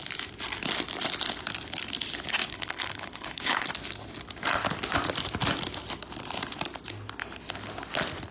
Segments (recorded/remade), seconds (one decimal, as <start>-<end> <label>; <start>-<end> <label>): 0.0-2.4 recorded; 2.4-3.7 remade; 3.7-8.3 recorded